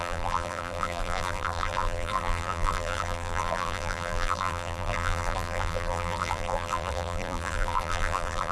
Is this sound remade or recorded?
remade